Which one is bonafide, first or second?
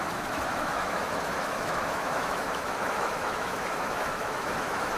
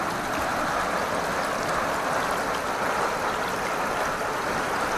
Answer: second